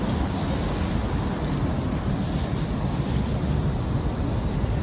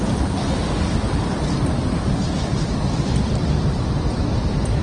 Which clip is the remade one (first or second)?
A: second